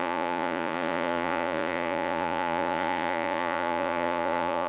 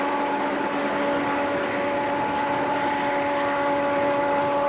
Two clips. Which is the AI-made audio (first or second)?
first